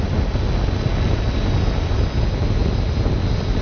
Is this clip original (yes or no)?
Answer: yes